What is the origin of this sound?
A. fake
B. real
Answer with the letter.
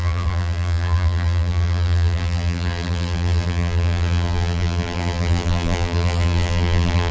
A